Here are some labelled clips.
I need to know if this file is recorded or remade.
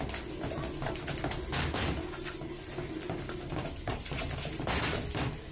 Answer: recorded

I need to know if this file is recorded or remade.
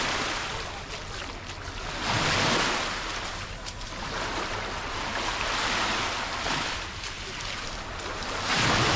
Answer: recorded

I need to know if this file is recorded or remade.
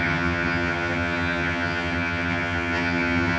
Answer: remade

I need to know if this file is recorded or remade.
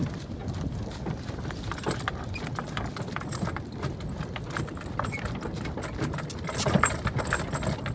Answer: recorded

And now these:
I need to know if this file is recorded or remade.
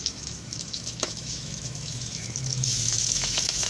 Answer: remade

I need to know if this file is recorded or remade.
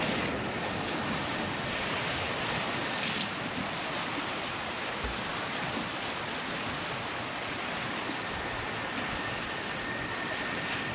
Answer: recorded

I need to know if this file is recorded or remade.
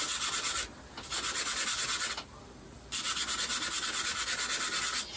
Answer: recorded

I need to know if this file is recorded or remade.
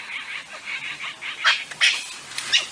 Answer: recorded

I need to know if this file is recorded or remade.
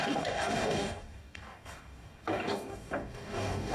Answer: remade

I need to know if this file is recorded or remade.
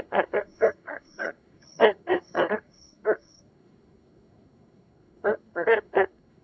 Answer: remade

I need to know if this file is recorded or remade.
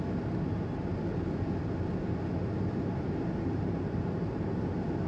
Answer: recorded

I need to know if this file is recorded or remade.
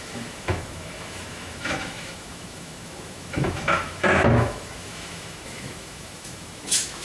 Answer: remade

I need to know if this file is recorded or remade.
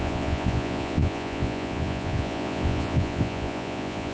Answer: remade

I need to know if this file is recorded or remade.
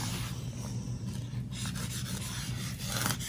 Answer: recorded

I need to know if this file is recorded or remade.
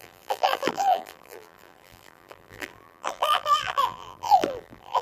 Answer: remade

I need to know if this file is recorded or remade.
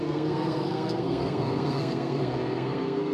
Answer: remade